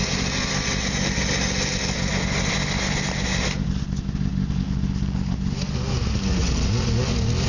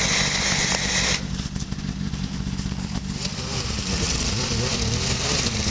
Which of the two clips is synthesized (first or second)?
second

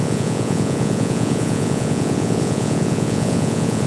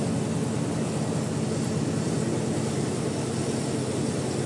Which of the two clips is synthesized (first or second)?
first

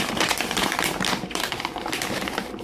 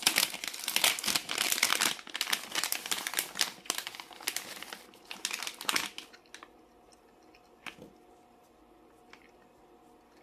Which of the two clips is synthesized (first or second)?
first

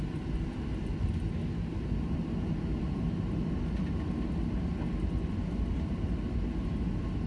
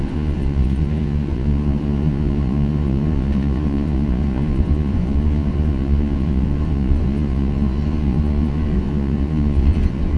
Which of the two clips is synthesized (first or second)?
second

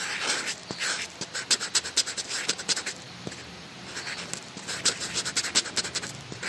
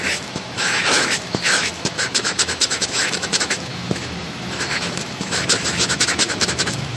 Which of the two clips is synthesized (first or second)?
second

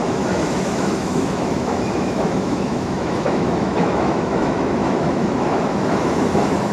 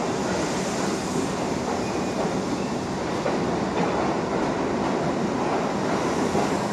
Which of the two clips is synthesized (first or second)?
first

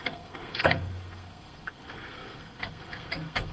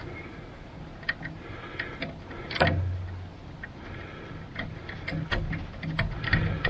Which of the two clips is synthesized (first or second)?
first